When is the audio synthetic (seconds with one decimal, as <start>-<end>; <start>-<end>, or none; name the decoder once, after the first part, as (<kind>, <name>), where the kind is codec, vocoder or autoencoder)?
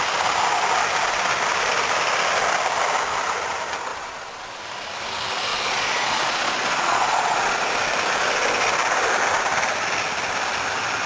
3.9-4.6 (vocoder, Vocos); 5.5-7.7